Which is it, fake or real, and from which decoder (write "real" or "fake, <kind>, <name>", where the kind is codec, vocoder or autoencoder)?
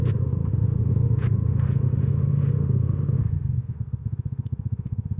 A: fake, autoencoder, DAC-VAE